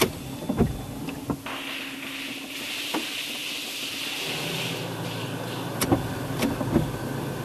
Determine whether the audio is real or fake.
real